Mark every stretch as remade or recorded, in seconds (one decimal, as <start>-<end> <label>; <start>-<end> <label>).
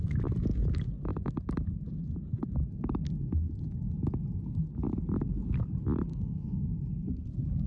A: 0.0-6.1 recorded; 6.1-6.6 remade; 6.6-7.7 recorded